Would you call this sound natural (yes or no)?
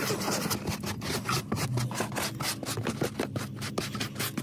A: yes